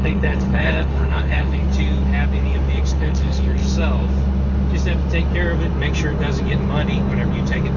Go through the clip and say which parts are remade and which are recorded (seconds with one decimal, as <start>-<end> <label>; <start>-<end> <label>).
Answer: 0.0-1.6 remade; 1.6-2.9 recorded; 2.9-3.6 remade; 3.6-7.8 recorded